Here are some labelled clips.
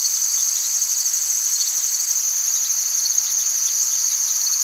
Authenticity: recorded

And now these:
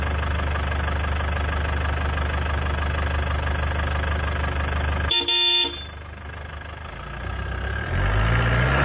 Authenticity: recorded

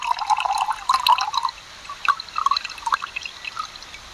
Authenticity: recorded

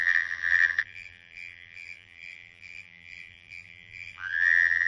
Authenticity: remade